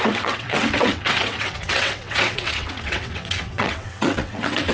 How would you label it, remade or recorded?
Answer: remade